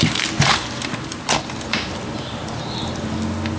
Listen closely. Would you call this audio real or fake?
real